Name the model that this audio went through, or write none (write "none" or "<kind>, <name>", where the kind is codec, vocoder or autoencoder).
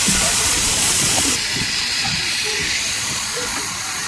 vocoder, Vocos